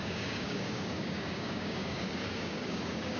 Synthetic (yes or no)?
yes